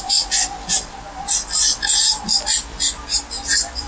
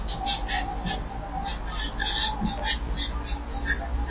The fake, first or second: first